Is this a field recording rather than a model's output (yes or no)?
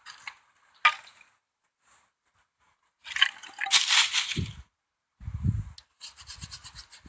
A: yes